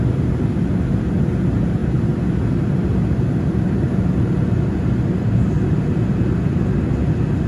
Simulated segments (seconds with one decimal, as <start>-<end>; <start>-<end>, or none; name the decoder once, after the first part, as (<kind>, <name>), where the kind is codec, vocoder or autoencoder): none